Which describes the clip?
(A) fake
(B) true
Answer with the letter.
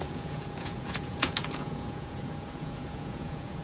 A